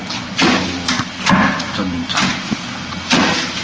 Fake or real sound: real